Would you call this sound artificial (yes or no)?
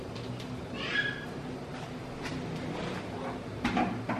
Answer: no